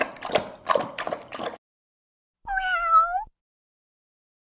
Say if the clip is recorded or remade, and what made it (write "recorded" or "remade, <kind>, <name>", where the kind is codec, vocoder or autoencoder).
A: recorded